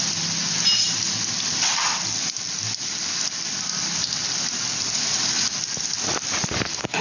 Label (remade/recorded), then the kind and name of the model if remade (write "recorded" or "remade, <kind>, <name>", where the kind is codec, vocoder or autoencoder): recorded